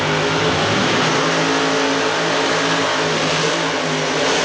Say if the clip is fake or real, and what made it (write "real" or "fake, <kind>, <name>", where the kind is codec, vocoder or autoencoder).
real